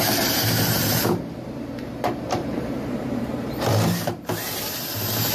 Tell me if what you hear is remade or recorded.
remade